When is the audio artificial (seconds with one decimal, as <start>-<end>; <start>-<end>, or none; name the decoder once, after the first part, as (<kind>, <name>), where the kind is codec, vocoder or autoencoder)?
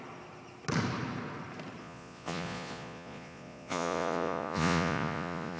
1.8-5.6 (vocoder, Vocos)